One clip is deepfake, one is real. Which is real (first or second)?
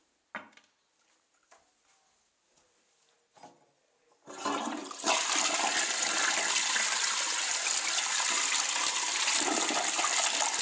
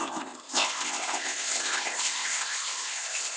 first